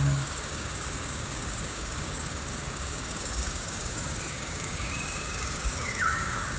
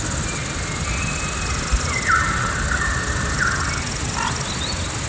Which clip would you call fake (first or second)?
first